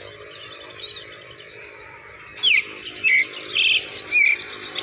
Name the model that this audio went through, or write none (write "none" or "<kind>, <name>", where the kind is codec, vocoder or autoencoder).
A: none